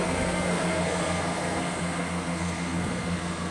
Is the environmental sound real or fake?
fake